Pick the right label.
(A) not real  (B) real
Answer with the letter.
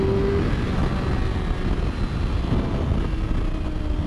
B